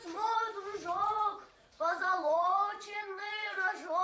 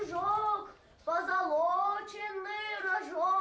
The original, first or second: second